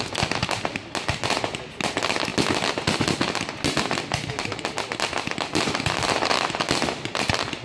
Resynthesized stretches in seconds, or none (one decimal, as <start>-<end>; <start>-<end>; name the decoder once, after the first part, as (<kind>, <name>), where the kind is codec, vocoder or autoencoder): none